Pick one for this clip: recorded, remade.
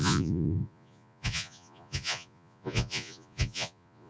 remade